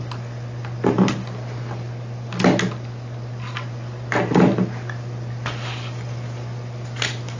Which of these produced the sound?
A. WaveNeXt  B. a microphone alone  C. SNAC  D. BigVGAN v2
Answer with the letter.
B